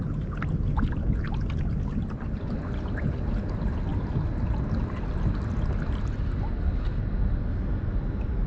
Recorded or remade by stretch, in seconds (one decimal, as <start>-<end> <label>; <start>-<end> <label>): 0.0-8.5 recorded

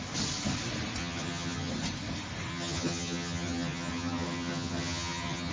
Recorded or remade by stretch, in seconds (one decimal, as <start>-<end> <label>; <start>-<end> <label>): 0.0-1.0 recorded; 1.0-1.7 remade; 1.7-2.5 recorded; 2.5-5.5 remade

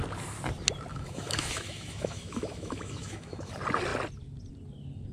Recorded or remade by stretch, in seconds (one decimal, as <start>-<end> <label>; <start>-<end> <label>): 0.0-0.9 recorded; 0.9-3.5 remade; 3.5-5.1 recorded

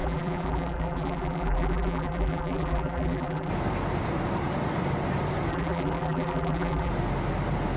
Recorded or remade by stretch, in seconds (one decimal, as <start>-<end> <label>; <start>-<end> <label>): 0.0-3.5 remade; 3.5-5.5 recorded; 5.5-6.9 remade; 6.9-7.8 recorded